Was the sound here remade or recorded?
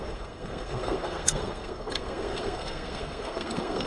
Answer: remade